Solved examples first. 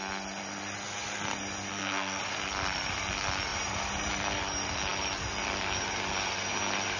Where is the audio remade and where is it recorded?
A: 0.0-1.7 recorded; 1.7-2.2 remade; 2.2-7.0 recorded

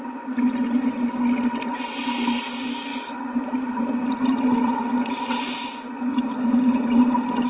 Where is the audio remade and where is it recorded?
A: 0.0-7.5 recorded

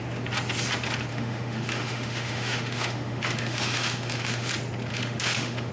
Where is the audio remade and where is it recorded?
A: 0.0-1.1 recorded; 1.1-4.5 remade; 4.5-4.9 recorded; 4.9-5.7 remade

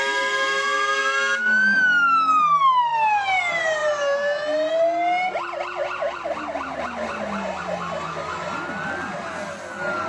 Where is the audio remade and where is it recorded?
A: 0.0-10.1 recorded